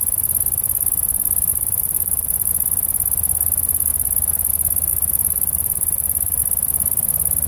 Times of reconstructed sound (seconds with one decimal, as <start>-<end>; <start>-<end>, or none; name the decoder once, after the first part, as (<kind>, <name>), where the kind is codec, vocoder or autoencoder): 1.5-2.5 (vocoder, BigVGAN v2); 4.9-6.4